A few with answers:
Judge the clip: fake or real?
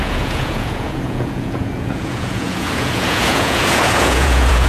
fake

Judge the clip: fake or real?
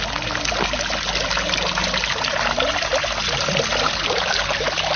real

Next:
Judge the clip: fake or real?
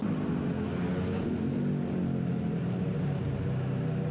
real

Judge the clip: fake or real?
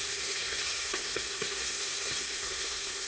fake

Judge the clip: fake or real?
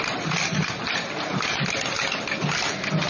real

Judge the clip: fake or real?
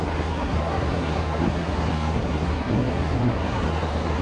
fake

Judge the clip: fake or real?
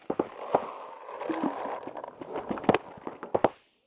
real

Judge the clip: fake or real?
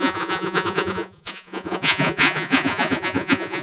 fake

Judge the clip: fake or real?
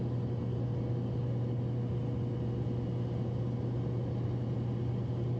real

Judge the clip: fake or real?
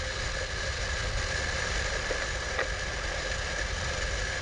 real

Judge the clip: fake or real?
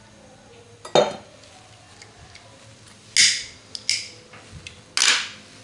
real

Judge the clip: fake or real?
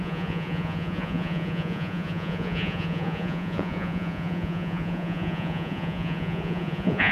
fake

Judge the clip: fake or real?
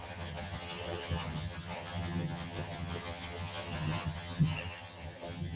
fake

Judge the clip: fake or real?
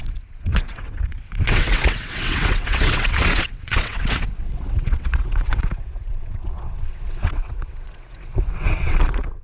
fake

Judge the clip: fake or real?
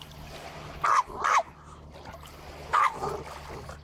real